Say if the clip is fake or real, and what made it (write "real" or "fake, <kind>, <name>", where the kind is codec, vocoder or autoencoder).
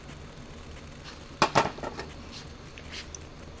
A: real